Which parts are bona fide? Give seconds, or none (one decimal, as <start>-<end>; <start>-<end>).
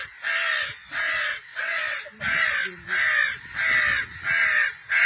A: 0.0-0.8; 1.8-5.1